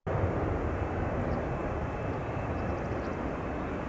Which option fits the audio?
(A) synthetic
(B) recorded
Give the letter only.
B